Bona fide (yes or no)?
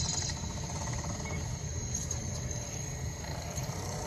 no